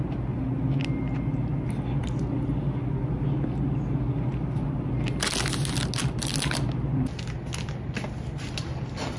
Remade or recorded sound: recorded